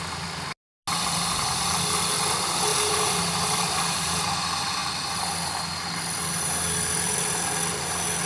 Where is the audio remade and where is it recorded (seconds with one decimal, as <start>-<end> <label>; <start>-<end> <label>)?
0.0-2.7 recorded; 2.7-4.3 remade; 4.3-8.3 recorded